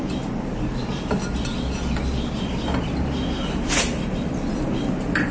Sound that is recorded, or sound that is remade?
recorded